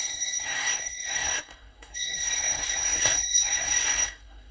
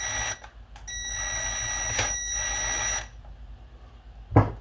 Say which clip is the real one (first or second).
second